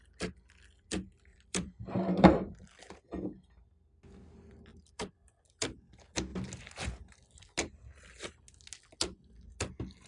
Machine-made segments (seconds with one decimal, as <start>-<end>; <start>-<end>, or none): 1.3-1.8; 4.7-5.3